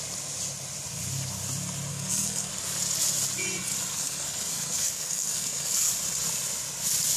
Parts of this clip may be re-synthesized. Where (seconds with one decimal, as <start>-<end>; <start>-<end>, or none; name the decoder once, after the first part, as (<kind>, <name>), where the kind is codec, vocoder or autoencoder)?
1.9-2.5 (codec, SNAC); 3.9-5.9